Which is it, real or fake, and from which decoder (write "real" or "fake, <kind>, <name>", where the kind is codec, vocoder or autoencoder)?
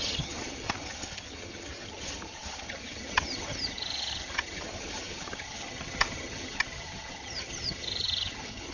fake, vocoder, HiFi-GAN